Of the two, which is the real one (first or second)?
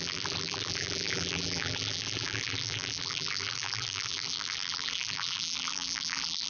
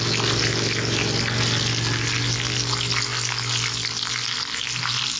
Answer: second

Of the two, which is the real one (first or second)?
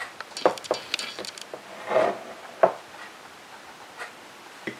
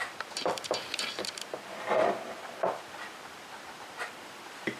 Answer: first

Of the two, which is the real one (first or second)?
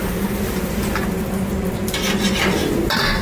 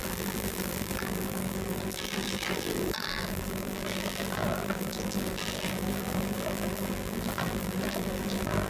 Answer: first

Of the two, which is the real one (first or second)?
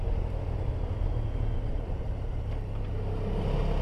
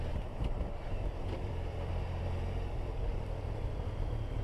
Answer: first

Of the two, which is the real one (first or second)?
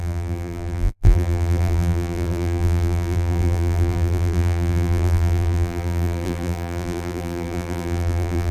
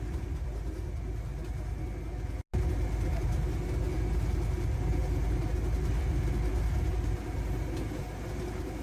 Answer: second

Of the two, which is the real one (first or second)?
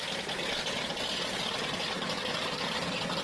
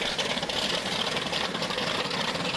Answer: first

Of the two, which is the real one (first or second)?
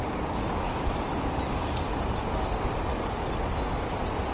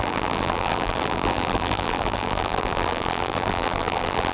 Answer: first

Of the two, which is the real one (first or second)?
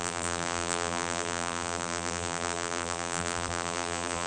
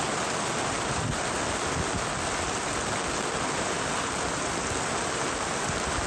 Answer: second